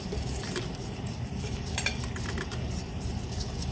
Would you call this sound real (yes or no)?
no